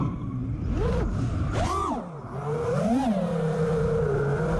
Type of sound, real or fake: fake